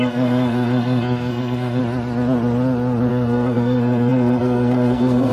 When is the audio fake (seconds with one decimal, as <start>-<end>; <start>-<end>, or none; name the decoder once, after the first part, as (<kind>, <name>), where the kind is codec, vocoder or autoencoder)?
0.0-1.8 (codec, SNAC); 3.1-5.3